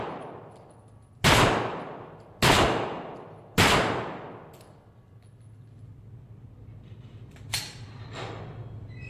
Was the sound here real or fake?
real